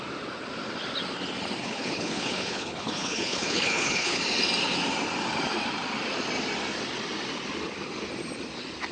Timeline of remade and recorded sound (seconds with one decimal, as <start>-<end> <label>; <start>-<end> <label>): 0.0-1.6 recorded; 1.6-4.2 remade; 4.2-8.9 recorded